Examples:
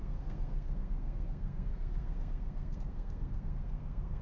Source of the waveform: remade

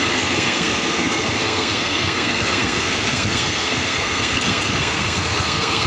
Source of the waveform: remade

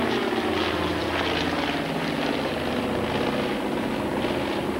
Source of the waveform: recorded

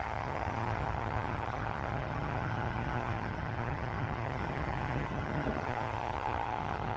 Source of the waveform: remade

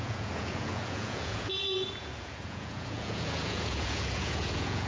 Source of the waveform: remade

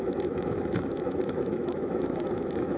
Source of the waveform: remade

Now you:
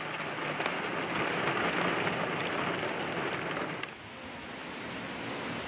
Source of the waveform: recorded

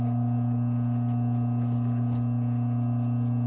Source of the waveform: recorded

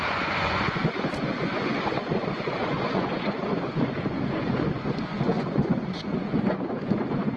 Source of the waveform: remade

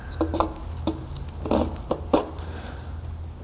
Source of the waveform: recorded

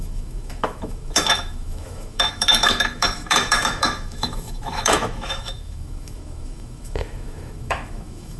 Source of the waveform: remade